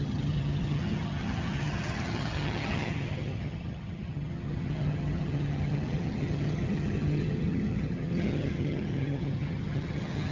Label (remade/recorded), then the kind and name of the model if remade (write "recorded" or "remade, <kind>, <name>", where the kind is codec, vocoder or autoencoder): remade, vocoder, HiFi-GAN